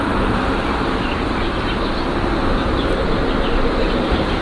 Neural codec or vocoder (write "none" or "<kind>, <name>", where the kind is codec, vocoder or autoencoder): vocoder, BigVGAN v2